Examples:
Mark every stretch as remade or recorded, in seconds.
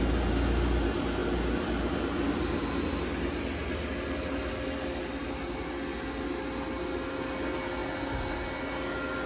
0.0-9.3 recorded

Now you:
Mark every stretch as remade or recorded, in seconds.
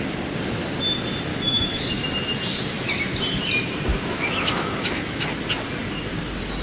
0.0-1.3 recorded; 1.3-1.8 remade; 1.8-3.9 recorded; 3.9-5.3 remade; 5.3-6.6 recorded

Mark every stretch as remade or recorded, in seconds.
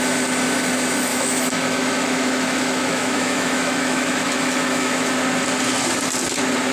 0.0-1.1 recorded; 1.1-5.1 remade; 5.1-6.7 recorded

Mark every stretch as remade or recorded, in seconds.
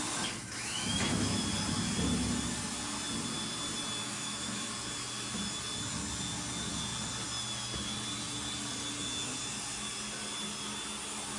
0.0-0.4 recorded; 0.4-1.5 remade; 1.5-4.0 recorded; 4.0-4.7 remade; 4.7-11.4 recorded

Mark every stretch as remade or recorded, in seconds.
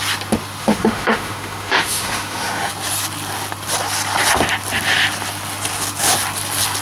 0.0-0.6 recorded; 0.6-2.7 remade; 2.7-6.8 recorded